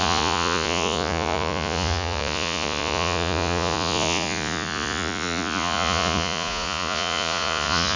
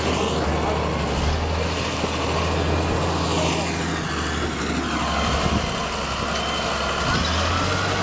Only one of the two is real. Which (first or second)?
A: second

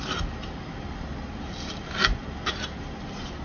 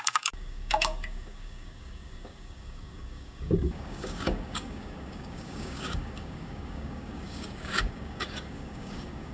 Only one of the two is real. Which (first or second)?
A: first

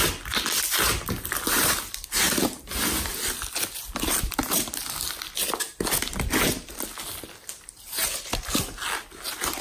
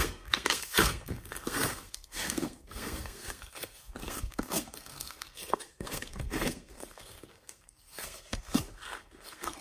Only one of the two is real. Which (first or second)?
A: first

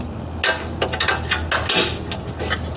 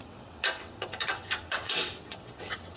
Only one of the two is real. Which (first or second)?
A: first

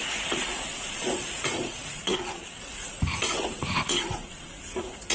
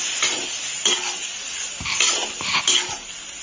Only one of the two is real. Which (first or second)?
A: second